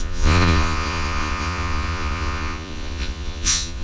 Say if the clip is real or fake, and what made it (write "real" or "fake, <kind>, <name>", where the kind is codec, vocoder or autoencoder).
fake, vocoder, Vocos